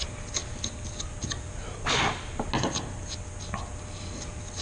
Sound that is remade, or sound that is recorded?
recorded